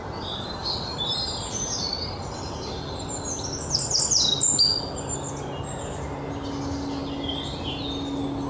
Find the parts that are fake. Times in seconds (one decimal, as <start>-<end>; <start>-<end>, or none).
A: none